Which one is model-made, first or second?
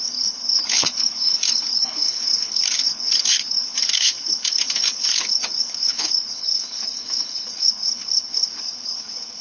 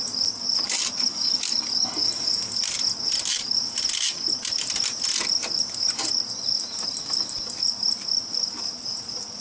first